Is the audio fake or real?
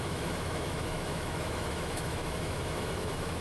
fake